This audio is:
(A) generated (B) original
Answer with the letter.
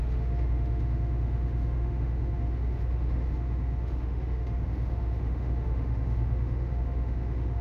A